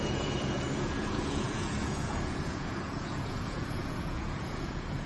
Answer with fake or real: fake